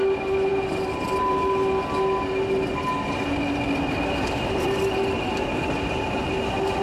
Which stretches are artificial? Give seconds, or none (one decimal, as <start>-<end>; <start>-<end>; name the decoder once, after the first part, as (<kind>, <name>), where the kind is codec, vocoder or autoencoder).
none